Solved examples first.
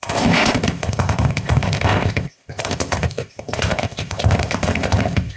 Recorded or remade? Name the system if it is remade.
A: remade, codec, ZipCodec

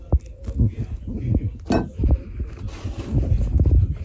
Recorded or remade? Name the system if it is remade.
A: recorded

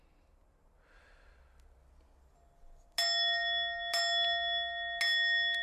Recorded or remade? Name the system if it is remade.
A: recorded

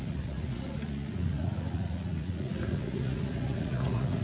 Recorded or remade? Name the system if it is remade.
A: remade, vocoder, Vocos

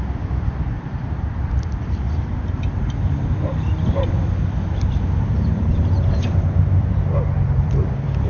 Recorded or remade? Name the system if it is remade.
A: remade, vocoder, BigVGAN v2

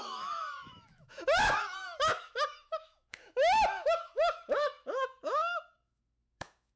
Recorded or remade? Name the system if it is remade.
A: remade, autoencoder, DAC-VAE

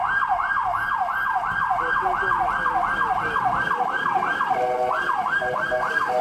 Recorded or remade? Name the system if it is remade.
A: recorded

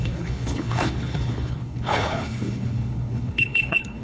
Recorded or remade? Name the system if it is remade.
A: remade, codec, HILCodec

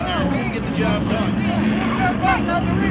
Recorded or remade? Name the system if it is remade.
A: recorded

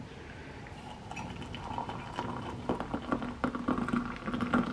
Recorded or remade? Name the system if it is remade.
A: recorded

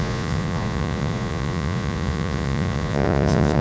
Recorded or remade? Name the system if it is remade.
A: remade, vocoder, Vocos